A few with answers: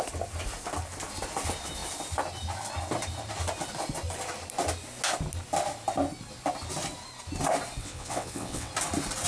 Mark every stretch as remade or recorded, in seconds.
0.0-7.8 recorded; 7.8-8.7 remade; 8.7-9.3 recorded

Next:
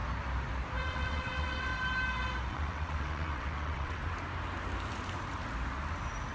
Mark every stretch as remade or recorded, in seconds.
0.0-0.8 recorded; 0.8-1.7 remade; 1.7-2.5 recorded; 2.5-4.0 remade; 4.0-6.3 recorded

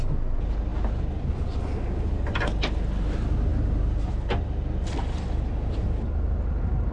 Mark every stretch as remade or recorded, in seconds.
0.0-6.9 recorded

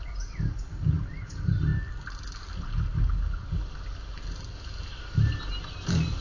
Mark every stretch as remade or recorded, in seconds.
0.0-6.2 recorded

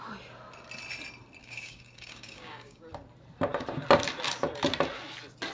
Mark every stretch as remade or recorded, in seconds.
0.0-1.4 recorded; 1.4-2.9 remade; 2.9-5.5 recorded

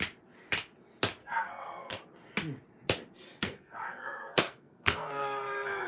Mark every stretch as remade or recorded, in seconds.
0.0-1.2 recorded; 1.2-2.0 remade; 2.0-3.4 recorded; 3.4-5.9 remade

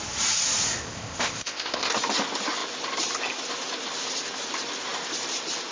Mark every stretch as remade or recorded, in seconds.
0.0-0.8 recorded; 0.8-1.9 remade; 1.9-5.7 recorded

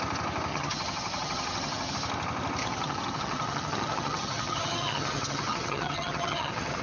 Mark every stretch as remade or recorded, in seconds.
0.0-0.5 recorded; 0.5-1.9 remade; 1.9-2.6 recorded; 2.6-6.8 remade